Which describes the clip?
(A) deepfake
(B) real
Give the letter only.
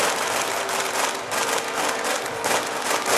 B